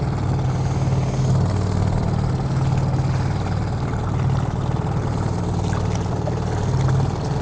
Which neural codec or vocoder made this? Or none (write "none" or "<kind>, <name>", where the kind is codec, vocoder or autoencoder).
none